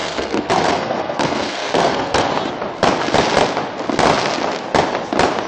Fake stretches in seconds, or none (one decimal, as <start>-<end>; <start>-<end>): 0.0-2.3